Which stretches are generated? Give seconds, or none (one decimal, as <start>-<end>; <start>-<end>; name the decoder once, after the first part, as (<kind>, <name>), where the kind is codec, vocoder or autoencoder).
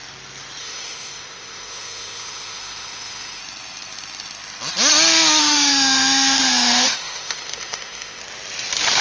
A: 0.6-3.4 (autoencoder, DAC-VAE); 5.4-8.2